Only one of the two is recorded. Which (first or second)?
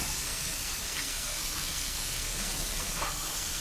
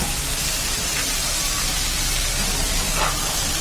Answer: second